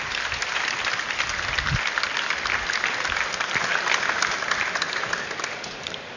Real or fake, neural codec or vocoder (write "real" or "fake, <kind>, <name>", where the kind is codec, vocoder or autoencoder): real